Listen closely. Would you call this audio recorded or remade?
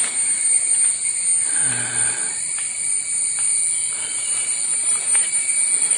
recorded